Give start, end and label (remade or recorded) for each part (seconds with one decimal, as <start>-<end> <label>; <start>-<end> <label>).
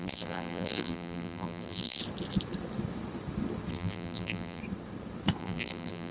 0.0-2.0 remade; 2.0-3.7 recorded; 3.7-4.6 remade; 4.6-5.4 recorded; 5.4-6.1 remade